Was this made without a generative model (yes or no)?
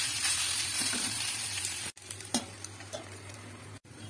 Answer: no